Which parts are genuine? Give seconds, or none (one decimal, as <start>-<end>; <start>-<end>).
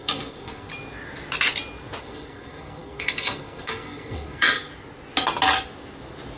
0.7-2.0; 4.7-6.4